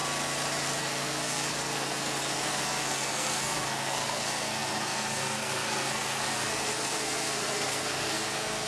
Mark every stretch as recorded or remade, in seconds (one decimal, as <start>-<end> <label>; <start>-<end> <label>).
0.0-0.8 recorded; 0.8-8.7 remade